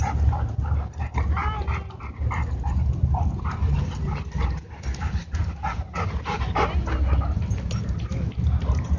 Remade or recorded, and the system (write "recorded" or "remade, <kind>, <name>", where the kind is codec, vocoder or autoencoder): recorded